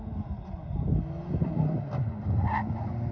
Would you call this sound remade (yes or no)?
no